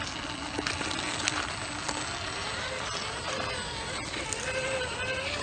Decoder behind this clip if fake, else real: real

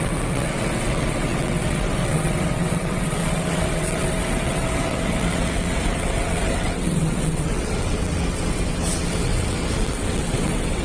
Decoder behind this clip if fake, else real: fake, vocoder, WaveNeXt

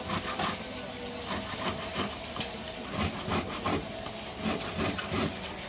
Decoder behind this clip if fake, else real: real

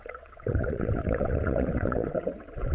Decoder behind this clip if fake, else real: fake, vocoder, WaveNeXt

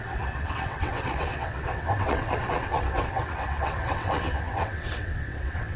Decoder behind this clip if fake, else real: fake, vocoder, WaveNeXt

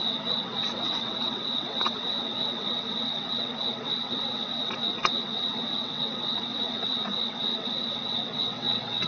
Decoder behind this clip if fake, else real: fake, vocoder, WaveNeXt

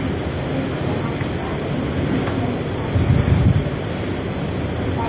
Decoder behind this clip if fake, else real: real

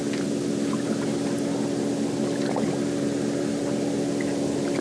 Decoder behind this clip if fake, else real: real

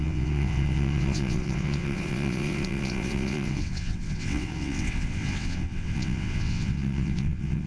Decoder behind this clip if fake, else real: fake, vocoder, WaveNeXt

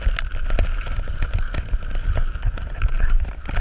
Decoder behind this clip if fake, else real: real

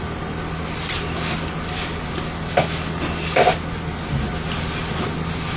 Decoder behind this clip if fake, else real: real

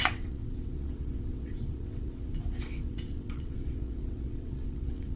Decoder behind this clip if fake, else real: fake, vocoder, WaveNeXt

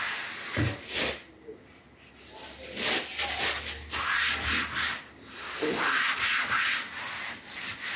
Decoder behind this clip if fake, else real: real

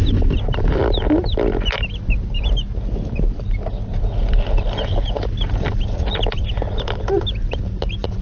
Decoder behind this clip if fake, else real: real